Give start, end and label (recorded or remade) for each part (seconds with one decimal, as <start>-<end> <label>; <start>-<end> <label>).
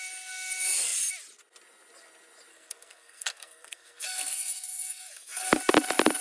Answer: 0.0-2.5 recorded; 2.5-5.6 remade; 5.6-6.2 recorded